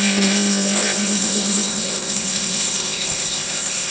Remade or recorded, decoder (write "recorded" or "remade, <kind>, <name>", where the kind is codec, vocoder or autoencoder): remade, codec, ZipCodec